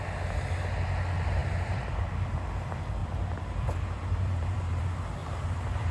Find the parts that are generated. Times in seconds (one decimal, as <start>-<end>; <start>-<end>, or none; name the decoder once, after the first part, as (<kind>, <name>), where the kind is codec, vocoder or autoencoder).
3.0-4.8 (vocoder, BigVGAN v2); 5.2-5.9